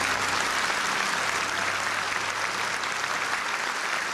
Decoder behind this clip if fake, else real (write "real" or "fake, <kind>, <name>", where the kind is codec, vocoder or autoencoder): real